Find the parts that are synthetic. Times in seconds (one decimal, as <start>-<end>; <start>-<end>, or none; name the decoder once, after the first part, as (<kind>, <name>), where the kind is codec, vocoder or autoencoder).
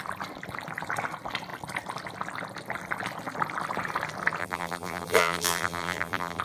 4.4-6.4 (vocoder, BigVGAN v2)